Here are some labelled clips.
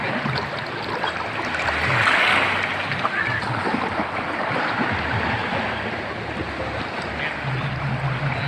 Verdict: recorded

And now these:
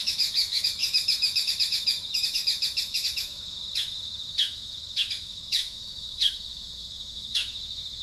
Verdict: remade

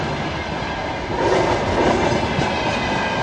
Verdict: recorded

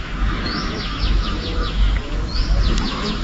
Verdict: remade